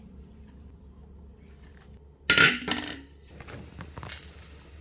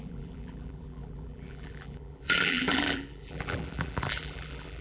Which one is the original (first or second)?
first